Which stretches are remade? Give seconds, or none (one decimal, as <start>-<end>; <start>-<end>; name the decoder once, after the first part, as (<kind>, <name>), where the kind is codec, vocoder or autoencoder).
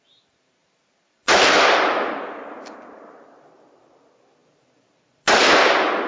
0.6-2.4 (vocoder, BigVGAN v2); 4.4-5.5